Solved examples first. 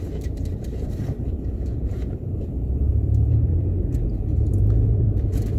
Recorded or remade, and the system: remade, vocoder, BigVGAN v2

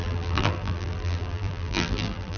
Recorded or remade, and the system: remade, vocoder, BigVGAN v2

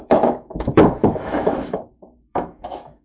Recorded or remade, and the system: remade, autoencoder, DAC-VAE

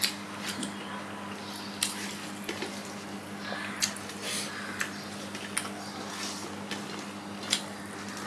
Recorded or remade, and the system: recorded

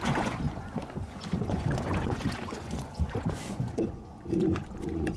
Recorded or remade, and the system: remade, vocoder, Vocos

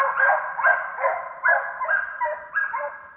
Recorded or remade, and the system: recorded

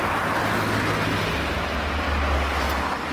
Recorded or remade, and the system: recorded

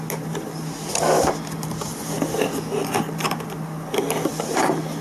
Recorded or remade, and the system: recorded